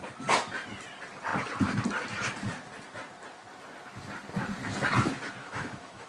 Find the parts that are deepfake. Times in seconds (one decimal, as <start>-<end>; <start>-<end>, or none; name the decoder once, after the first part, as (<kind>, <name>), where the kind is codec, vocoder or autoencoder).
5.4-6.1 (autoencoder, DAC-VAE)